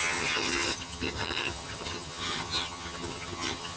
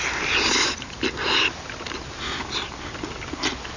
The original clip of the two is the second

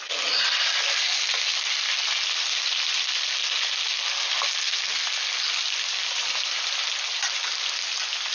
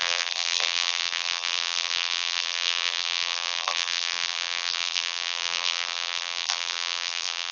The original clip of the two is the first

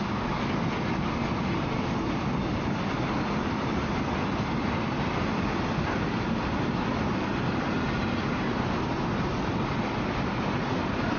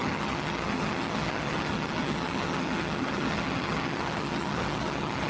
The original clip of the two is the first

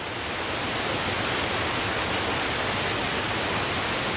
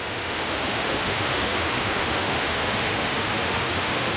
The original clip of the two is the first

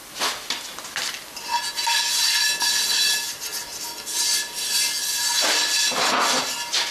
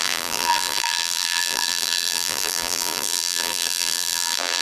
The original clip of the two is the first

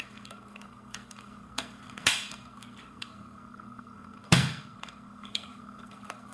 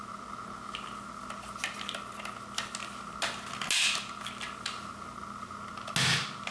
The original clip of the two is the second